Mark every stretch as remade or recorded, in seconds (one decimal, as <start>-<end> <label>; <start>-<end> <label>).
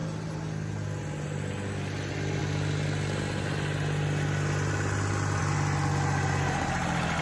0.0-7.2 recorded